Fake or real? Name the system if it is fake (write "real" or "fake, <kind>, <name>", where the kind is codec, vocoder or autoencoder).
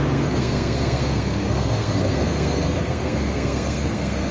fake, codec, SNAC